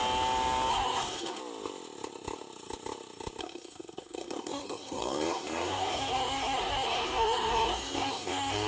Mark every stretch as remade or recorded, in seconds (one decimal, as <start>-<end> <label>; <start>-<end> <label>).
0.0-0.7 recorded; 0.7-1.4 remade; 1.4-3.4 recorded; 3.4-8.7 remade